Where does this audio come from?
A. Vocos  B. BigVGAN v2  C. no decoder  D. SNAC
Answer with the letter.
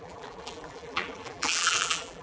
B